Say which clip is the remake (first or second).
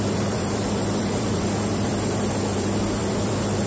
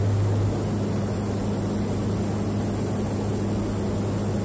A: first